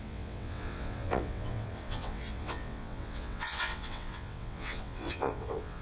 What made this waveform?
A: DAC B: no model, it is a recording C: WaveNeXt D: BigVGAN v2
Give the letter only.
C